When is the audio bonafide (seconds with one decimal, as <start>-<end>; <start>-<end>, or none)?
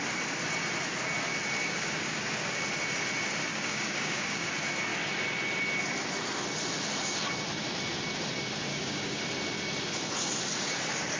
0.0-1.6; 2.5-3.5; 4.5-8.7; 9.2-11.2